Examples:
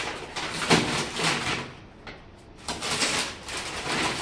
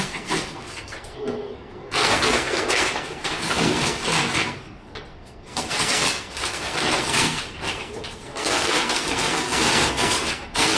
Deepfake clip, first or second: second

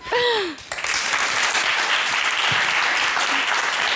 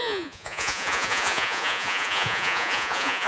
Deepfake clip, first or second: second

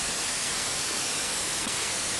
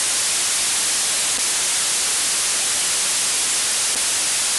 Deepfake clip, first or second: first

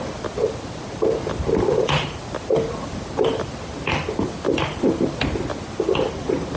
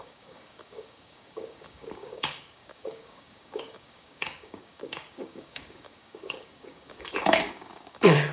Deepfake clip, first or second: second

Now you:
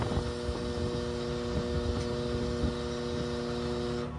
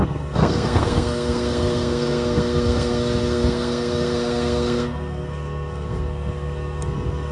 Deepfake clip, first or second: second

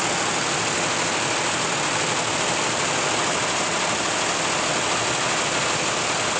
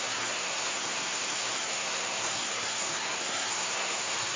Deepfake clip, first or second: second